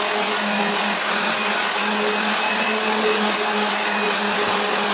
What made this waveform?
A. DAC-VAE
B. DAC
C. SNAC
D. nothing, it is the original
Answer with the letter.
D